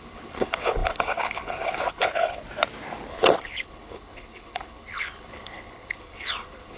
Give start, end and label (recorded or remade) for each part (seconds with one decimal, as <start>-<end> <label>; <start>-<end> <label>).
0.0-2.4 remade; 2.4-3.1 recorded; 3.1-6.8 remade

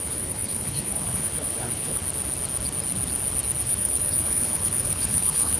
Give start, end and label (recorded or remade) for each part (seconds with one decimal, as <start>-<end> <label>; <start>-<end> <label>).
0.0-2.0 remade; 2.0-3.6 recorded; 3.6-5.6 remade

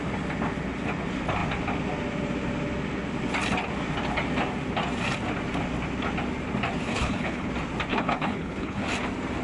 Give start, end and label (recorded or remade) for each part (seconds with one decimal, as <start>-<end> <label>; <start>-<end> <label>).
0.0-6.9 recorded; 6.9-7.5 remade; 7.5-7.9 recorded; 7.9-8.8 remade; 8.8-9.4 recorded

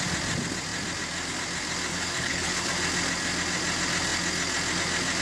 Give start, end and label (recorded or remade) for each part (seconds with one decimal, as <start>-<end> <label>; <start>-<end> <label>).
0.0-1.9 recorded; 1.9-2.7 remade; 2.7-5.2 recorded

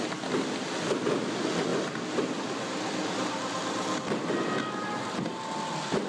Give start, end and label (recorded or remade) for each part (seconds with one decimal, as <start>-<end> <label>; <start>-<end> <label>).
0.0-6.1 recorded

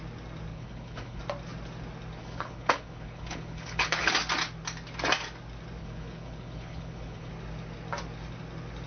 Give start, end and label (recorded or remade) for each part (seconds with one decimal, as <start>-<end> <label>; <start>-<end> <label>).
0.0-0.5 recorded; 0.5-1.2 remade; 1.2-2.2 recorded; 2.2-4.1 remade; 4.1-5.8 recorded; 5.8-7.3 remade; 7.3-8.9 recorded